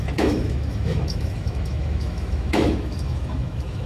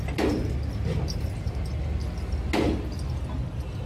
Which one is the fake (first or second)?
first